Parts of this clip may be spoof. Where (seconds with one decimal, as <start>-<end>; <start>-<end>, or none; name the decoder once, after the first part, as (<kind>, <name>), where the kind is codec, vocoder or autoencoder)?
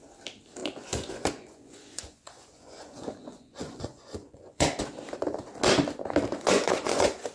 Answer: 0.6-4.8 (vocoder, Vocos); 6.3-7.3